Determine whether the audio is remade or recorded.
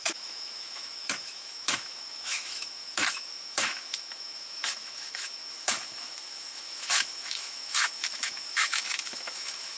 remade